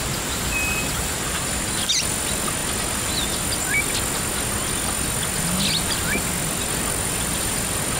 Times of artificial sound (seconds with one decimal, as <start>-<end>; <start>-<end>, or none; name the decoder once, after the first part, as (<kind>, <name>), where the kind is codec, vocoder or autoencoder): none